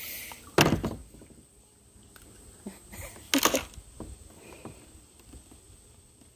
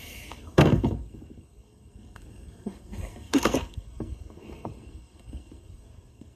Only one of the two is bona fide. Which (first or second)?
first